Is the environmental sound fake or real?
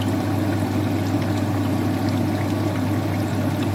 real